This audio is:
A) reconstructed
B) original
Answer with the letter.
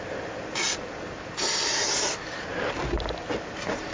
B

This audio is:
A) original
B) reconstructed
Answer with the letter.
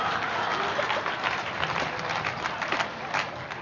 A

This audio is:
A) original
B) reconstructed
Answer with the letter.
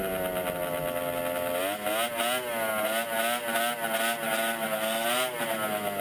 A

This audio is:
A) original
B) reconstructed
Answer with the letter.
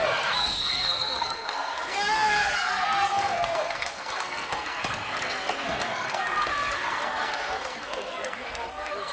B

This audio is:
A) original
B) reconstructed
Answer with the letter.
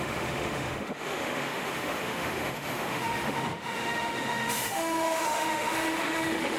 B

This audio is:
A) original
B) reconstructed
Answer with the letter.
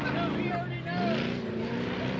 A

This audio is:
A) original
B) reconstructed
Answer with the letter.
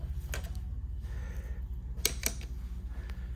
A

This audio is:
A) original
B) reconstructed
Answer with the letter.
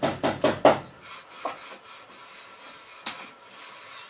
A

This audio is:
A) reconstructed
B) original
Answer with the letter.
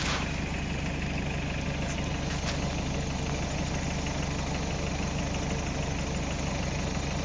B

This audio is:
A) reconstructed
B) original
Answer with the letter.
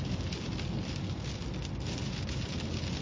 B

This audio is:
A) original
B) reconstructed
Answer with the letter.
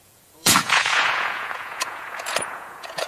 B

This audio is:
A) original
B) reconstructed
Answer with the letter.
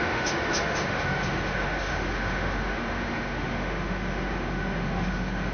B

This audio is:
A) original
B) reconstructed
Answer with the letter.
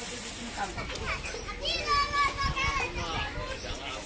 A